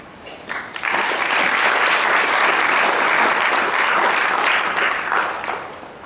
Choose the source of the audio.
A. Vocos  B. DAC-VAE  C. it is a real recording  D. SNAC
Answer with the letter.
C